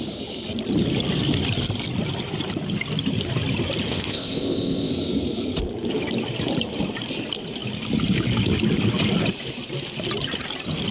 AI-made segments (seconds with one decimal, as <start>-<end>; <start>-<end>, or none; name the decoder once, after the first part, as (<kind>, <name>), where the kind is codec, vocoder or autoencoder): 3.9-4.9 (codec, ZipCodec)